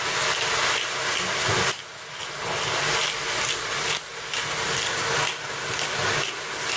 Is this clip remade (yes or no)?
no